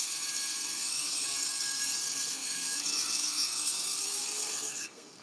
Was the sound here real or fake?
fake